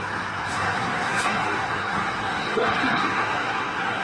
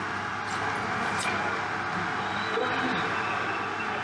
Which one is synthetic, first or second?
first